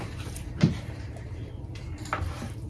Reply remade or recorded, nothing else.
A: remade